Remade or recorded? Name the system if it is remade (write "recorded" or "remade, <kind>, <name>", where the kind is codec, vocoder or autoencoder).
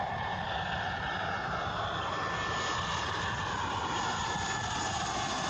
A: recorded